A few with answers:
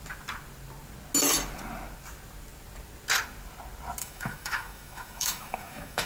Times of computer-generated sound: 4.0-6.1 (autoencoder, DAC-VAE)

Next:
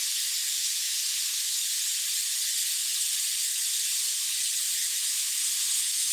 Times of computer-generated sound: 0.5-1.6 (autoencoder, DAC-VAE); 4.8-6.1

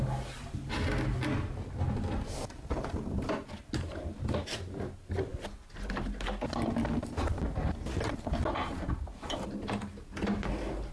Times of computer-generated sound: none

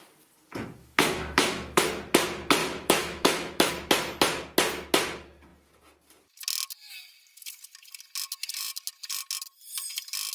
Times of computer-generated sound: 0.8-1.8 (autoencoder, DAC-VAE); 2.6-3.7